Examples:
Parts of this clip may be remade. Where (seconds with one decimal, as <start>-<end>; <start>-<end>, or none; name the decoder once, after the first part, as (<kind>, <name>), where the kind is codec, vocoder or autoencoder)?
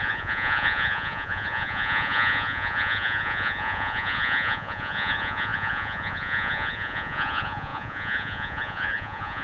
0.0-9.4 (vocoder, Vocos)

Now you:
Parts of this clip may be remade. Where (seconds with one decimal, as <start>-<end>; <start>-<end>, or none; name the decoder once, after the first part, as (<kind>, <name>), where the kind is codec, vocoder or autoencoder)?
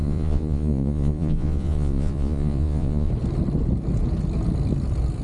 0.0-3.1 (vocoder, Vocos)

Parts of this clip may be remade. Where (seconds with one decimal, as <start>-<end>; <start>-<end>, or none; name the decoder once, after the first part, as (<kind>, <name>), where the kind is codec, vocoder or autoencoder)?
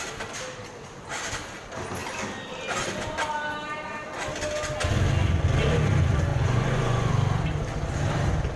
6.3-7.1 (vocoder, Vocos)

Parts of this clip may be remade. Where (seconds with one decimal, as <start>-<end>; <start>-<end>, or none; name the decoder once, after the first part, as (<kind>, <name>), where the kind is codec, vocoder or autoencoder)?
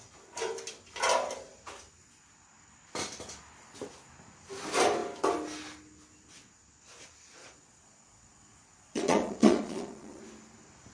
7.4-10.2 (vocoder, Vocos)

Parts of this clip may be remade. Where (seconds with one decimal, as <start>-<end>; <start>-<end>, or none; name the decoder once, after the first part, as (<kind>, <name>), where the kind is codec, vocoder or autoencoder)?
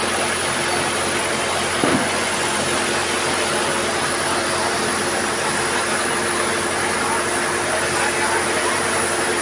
1.9-2.6 (vocoder, Vocos)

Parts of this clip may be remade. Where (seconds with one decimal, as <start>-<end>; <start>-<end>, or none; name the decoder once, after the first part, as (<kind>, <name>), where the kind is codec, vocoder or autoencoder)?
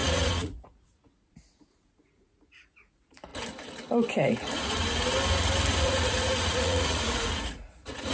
0.0-3.3 (vocoder, Vocos); 5.8-8.1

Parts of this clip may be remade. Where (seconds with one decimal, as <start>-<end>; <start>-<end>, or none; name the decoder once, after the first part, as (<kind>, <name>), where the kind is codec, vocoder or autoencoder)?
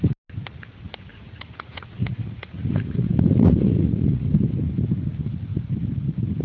1.1-4.3 (vocoder, Vocos)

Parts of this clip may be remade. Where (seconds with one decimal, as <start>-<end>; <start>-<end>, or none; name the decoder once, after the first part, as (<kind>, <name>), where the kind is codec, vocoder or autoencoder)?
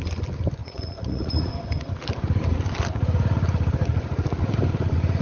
0.6-1.5 (vocoder, Vocos)